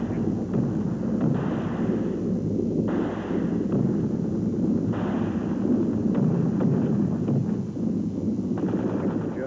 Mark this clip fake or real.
real